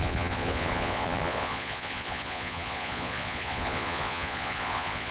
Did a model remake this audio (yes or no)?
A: yes